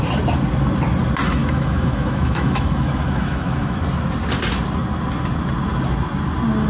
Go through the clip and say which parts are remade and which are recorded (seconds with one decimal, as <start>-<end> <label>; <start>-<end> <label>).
0.0-1.4 recorded; 1.4-3.8 remade; 3.8-6.7 recorded